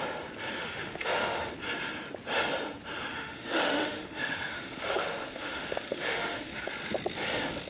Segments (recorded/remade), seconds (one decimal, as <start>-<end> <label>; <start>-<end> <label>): 0.0-0.6 recorded; 0.6-1.5 remade; 1.5-3.1 recorded; 3.1-6.7 remade; 6.7-7.7 recorded